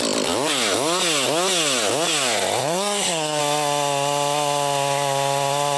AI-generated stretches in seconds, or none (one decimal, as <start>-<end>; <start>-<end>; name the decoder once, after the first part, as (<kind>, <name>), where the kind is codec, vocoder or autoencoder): 2.6-3.4 (codec, SNAC)